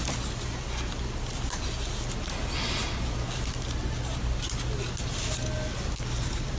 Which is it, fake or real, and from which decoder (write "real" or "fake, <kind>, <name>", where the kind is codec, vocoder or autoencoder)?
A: real